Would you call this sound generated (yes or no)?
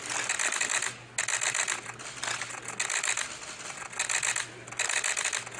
no